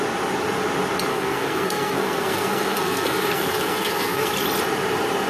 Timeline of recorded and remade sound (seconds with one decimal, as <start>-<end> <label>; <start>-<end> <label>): 0.0-1.1 recorded; 1.1-4.3 remade; 4.3-5.3 recorded